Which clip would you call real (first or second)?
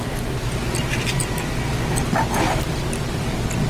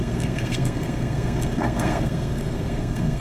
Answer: first